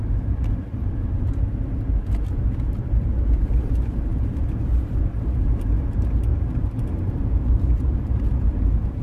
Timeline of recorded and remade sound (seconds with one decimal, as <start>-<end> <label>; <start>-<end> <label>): 0.0-9.0 remade